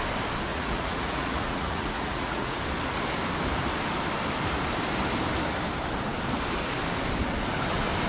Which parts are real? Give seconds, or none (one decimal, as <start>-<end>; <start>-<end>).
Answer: 0.0-0.5; 2.6-8.1